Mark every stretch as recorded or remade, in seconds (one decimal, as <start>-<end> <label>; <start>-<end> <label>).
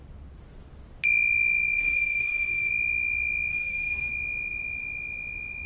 0.0-1.8 recorded; 1.8-2.7 remade; 2.7-3.5 recorded; 3.5-4.1 remade; 4.1-5.7 recorded